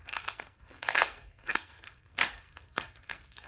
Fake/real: fake